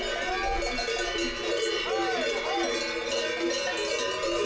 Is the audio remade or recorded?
recorded